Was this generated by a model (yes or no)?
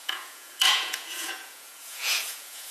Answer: yes